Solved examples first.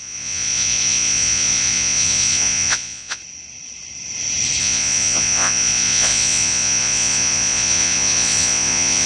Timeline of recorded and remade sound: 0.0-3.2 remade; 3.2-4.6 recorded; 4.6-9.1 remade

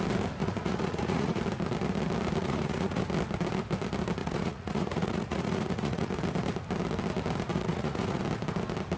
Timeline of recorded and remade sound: 0.0-0.4 recorded; 0.4-1.4 remade; 1.4-2.4 recorded; 2.4-3.0 remade; 3.0-4.2 recorded; 4.2-6.1 remade; 6.1-7.5 recorded; 7.5-8.2 remade; 8.2-9.0 recorded

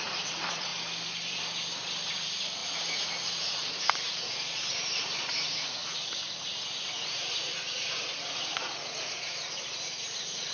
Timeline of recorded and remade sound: 0.0-0.7 remade; 0.7-2.1 recorded; 2.1-10.5 remade

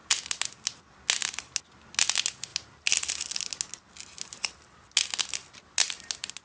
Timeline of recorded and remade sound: 0.0-6.4 recorded

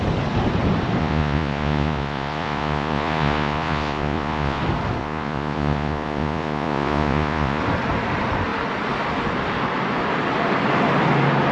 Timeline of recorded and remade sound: 0.0-1.0 recorded; 1.0-4.6 remade; 4.6-5.0 recorded; 5.0-7.6 remade; 7.6-11.5 recorded

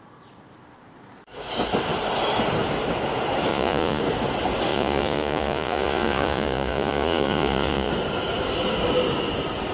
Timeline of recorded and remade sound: 0.0-3.5 recorded; 3.5-4.0 remade; 4.0-4.7 recorded; 4.7-7.9 remade; 7.9-9.7 recorded

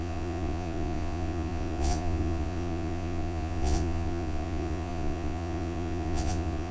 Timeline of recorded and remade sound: 0.0-6.7 remade

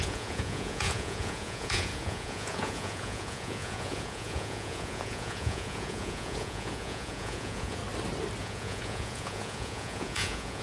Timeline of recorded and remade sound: 0.0-7.8 remade; 7.8-8.4 recorded; 8.4-10.6 remade